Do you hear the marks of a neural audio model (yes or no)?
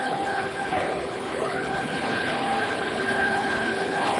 yes